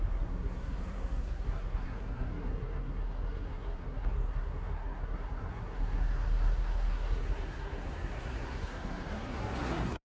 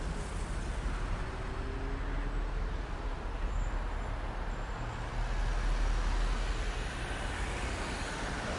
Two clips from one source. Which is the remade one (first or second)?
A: first